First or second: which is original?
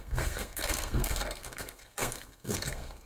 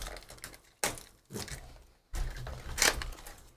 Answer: second